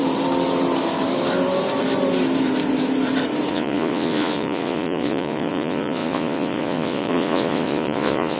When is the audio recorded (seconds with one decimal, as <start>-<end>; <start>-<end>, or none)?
0.0-3.5